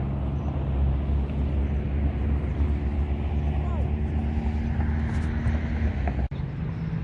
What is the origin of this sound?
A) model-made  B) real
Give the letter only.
B